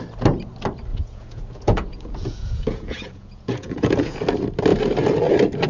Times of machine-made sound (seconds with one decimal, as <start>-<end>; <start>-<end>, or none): 0.9-4.2